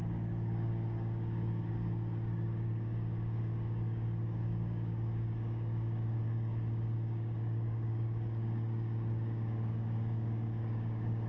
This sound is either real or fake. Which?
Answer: fake